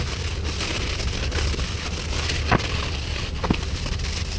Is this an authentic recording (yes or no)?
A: yes